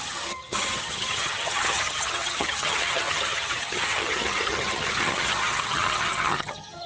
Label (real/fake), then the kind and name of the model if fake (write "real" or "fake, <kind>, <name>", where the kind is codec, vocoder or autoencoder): fake, vocoder, HiFi-GAN